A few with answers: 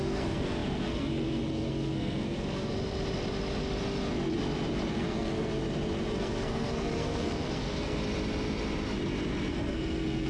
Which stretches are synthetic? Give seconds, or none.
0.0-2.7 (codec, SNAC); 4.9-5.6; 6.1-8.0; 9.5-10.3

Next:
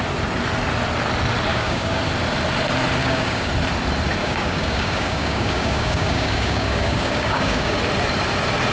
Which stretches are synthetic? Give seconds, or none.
1.5-2.0 (codec, DAC); 3.0-3.5; 4.2-7.8

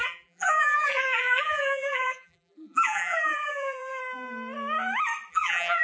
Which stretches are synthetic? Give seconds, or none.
0.0-4.0 (vocoder, BigVGAN v2); 5.3-5.8